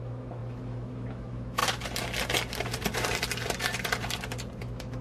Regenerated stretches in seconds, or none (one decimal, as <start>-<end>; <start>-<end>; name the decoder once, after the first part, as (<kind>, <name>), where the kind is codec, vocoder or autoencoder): 0.0-1.6 (autoencoder, DAC-VAE); 4.6-5.0